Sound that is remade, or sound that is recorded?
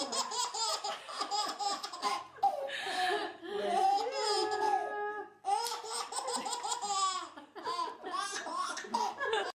recorded